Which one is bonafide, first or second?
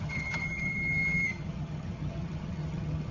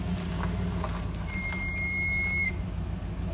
second